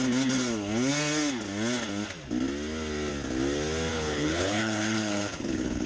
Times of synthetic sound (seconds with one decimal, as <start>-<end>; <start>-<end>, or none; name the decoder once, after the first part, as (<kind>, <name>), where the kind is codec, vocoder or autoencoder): 3.9-5.9 (codec, HILCodec)

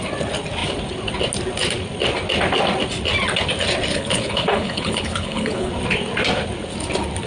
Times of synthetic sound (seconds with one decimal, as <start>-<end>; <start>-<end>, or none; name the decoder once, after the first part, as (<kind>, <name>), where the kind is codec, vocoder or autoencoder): 3.9-5.7 (codec, HILCodec)

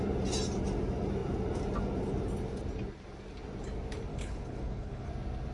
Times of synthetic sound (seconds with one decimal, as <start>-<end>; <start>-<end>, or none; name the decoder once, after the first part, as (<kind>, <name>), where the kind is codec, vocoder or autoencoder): 4.1-5.1 (codec, HILCodec)

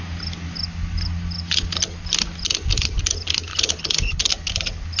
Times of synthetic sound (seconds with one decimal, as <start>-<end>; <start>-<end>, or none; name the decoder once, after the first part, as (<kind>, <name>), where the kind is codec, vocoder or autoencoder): 3.5-4.3 (codec, HILCodec)

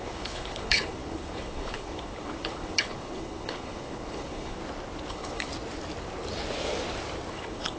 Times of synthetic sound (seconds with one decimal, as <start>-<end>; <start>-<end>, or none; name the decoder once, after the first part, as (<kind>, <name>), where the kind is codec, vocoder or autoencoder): 0.0-4.6 (codec, HILCodec); 5.1-5.5; 7.3-7.8

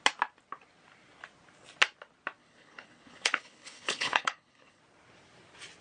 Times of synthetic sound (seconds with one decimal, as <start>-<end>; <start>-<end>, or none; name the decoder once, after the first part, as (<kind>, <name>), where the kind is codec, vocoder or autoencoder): 2.4-4.8 (codec, HILCodec)

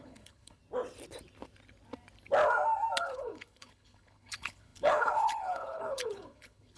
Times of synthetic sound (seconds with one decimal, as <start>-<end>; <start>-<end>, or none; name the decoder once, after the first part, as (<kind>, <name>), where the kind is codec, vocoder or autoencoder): 0.0-0.6 (codec, HILCodec); 3.0-6.8